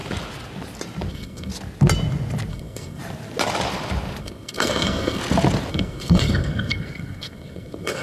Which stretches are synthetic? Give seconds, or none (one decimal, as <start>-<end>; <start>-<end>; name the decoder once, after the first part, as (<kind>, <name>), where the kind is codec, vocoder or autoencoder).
1.1-1.5 (codec, SNAC); 2.5-3.0; 4.2-5.2; 5.7-8.0